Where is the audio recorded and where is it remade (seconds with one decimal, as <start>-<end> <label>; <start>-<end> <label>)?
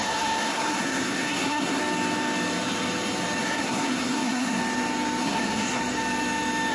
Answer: 0.0-1.8 remade; 1.8-3.4 recorded; 3.4-4.6 remade; 4.6-5.2 recorded; 5.2-5.8 remade; 5.8-6.7 recorded